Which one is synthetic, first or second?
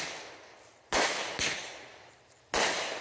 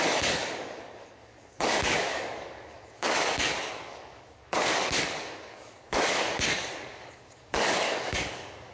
second